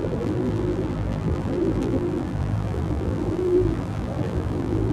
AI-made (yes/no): yes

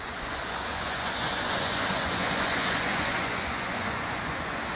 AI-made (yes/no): yes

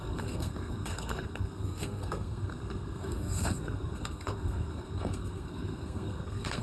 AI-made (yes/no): yes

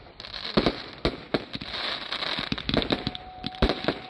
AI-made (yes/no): no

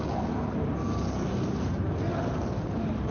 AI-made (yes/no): no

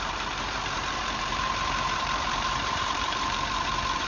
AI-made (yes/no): yes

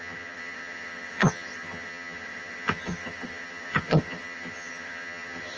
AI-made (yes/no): yes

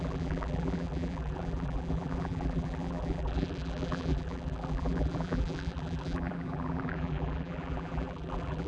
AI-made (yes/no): yes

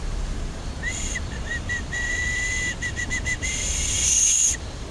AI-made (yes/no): yes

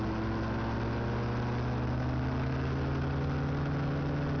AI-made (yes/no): no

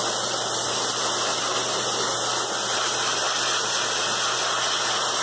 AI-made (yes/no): no